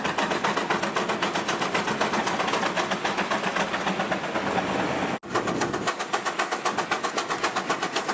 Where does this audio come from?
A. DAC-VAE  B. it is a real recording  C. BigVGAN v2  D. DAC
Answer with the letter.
B